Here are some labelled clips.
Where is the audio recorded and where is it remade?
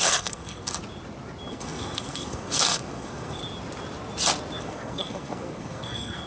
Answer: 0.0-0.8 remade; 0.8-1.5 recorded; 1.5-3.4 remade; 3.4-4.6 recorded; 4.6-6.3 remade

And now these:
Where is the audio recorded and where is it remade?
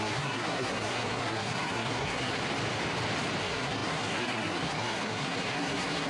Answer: 0.0-2.4 remade; 2.4-3.4 recorded; 3.4-6.1 remade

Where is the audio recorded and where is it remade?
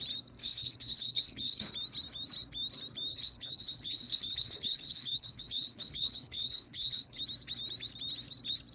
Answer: 0.0-0.4 recorded; 0.4-1.7 remade; 1.7-3.1 recorded; 3.1-7.2 remade; 7.2-8.7 recorded